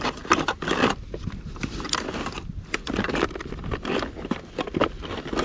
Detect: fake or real real